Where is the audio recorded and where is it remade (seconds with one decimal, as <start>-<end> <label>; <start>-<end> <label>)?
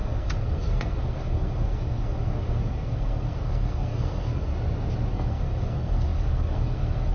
0.0-4.5 remade; 4.5-5.1 recorded; 5.1-7.1 remade